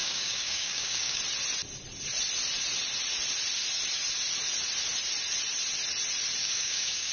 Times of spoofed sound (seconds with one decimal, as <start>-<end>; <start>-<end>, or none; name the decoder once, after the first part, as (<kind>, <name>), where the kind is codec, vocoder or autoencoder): 0.0-1.2 (codec, DAC); 6.4-7.1